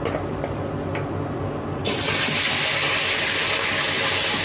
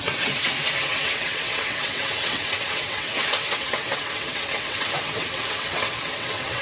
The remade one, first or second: second